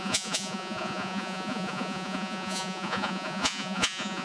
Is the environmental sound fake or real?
fake